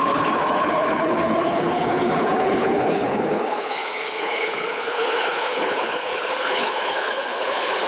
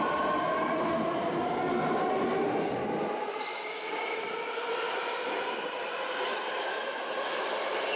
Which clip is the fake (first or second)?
first